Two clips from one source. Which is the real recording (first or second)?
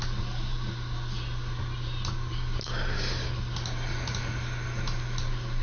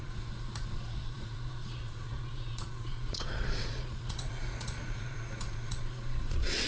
first